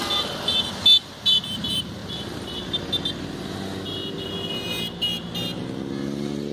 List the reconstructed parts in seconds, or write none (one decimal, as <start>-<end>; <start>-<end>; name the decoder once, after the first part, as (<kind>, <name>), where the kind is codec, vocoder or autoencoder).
none